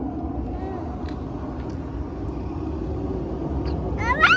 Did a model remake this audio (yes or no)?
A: no